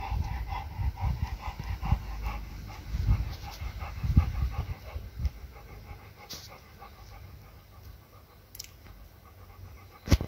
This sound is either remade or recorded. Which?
recorded